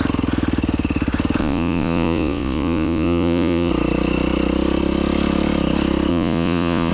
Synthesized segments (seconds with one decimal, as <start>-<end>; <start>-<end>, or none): 1.4-3.7; 6.1-6.9